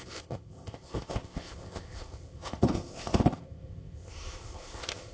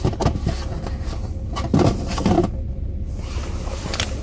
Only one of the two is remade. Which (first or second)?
first